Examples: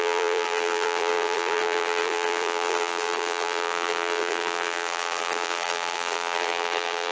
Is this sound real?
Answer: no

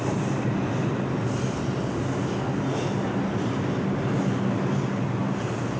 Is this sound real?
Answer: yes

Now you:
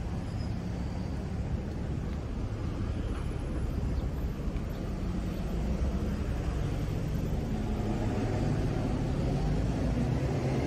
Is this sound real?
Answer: yes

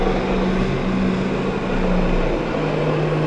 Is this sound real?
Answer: yes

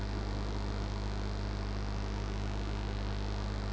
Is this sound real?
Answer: yes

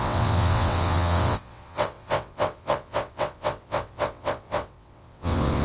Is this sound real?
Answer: no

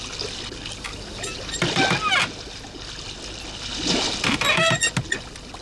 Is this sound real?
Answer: yes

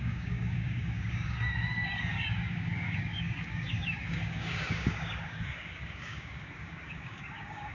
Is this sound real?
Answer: no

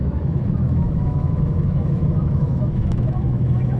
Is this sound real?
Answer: no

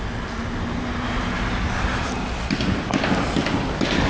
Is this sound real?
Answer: yes